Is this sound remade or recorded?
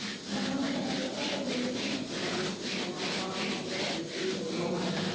recorded